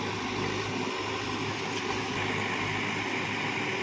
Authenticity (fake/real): real